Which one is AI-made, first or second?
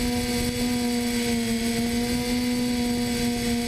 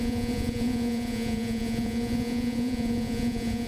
second